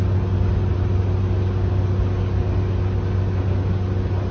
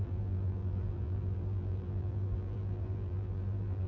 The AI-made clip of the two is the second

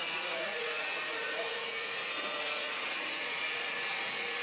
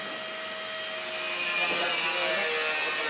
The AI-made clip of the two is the first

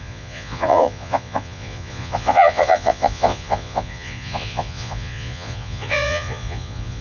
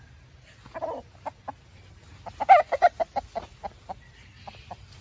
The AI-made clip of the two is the first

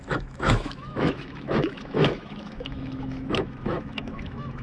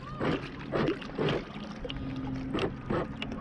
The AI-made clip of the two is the first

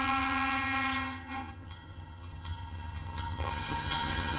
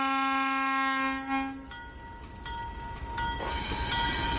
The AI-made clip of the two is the first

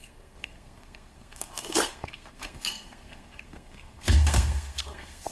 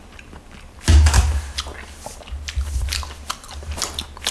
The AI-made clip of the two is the first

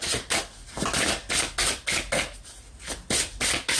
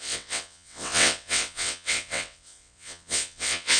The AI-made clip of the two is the second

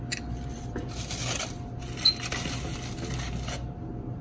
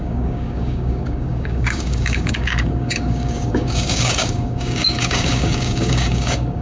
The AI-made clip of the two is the second